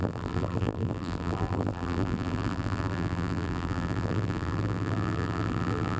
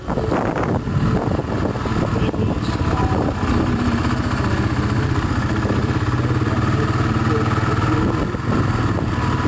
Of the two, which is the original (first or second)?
second